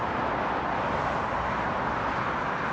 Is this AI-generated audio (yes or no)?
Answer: no